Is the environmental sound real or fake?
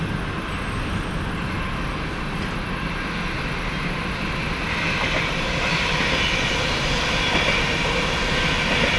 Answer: real